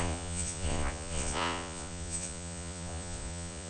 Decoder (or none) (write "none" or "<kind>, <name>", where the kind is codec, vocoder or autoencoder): vocoder, Vocos